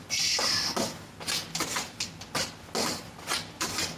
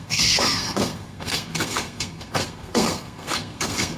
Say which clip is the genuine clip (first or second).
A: first